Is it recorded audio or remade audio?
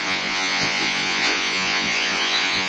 remade